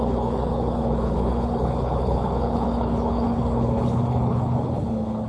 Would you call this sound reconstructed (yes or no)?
yes